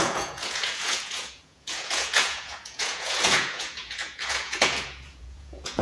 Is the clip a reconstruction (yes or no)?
yes